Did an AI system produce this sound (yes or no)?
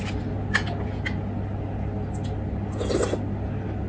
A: no